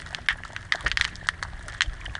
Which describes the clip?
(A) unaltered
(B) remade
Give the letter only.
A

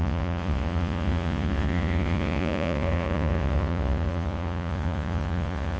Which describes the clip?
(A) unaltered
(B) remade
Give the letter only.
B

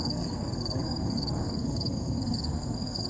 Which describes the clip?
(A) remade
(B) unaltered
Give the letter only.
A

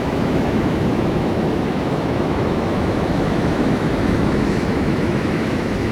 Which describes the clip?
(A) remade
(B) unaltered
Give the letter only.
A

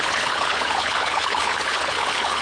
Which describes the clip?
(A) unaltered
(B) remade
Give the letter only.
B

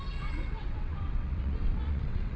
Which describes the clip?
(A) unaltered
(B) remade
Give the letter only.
B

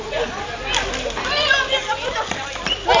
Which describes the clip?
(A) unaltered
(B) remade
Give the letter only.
A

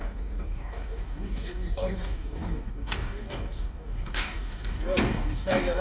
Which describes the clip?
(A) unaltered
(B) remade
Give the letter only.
B